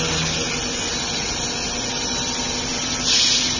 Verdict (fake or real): real